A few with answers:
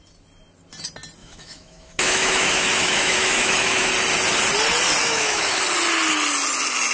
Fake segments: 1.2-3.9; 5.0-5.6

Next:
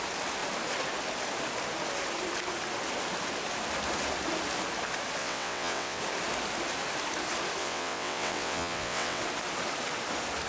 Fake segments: 5.2-6.0; 7.6-9.2

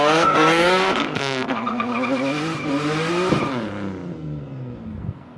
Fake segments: 0.0-1.9; 4.1-5.4

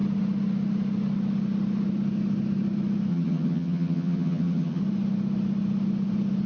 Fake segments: 3.1-4.8

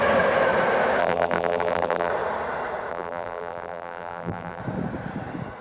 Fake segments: 1.0-2.1; 2.9-4.6